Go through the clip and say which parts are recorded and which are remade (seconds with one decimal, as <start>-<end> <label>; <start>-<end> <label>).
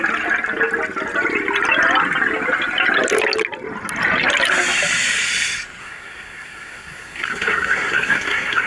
0.0-5.8 recorded; 5.8-8.7 remade